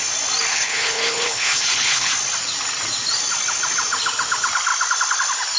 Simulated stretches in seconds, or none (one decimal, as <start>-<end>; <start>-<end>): 0.5-2.1